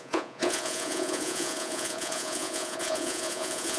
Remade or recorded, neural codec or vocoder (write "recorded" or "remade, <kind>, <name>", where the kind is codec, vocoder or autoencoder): remade, vocoder, Vocos